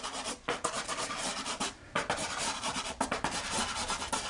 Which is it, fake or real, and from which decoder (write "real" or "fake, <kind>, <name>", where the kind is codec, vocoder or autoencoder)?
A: fake, vocoder, BigVGAN v2